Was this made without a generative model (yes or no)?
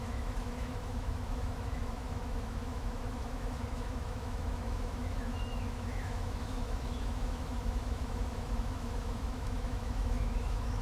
no